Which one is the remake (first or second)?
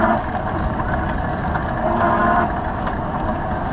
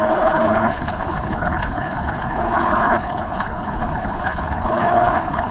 second